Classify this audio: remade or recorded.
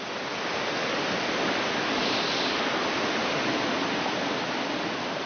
recorded